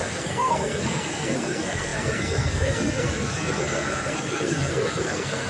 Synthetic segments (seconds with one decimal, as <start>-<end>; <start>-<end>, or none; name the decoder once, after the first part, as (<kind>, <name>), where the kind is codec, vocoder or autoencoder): 0.0-5.5 (codec, SNAC)